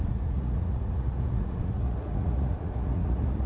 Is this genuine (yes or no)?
no